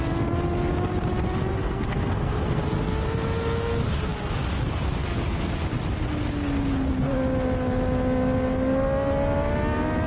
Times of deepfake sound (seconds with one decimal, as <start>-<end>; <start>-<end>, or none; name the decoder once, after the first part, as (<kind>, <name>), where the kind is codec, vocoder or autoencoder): 1.5-2.6 (codec, SNAC)